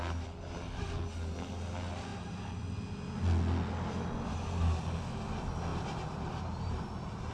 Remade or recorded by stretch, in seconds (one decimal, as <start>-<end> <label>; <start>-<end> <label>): 0.0-2.1 recorded; 2.1-2.6 remade; 2.6-5.7 recorded; 5.7-7.3 remade